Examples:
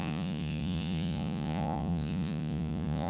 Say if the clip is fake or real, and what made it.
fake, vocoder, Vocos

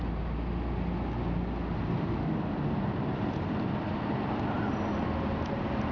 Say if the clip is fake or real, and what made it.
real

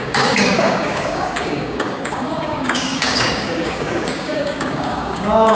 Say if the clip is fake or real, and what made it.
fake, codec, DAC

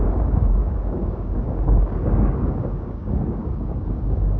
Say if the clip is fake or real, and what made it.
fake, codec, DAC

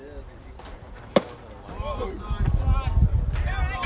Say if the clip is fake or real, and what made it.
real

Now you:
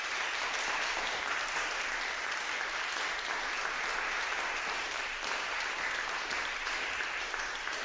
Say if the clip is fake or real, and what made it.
fake, vocoder, BigVGAN v2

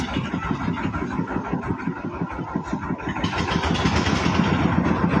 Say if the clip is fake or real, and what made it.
real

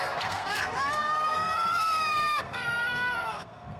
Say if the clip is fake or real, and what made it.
fake, codec, SNAC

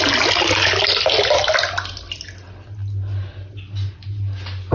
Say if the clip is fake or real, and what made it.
real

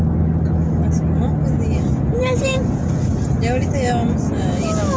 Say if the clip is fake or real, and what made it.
real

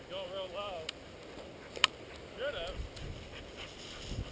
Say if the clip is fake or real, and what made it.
fake, vocoder, BigVGAN v2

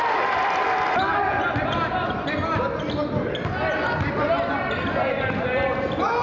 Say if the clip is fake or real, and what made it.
real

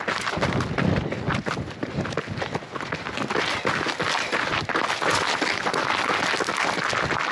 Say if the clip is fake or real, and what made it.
real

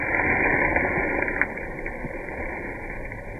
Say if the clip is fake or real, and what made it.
fake, vocoder, BigVGAN v2